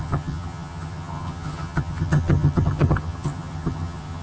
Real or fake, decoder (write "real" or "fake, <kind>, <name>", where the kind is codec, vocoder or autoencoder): fake, vocoder, HiFi-GAN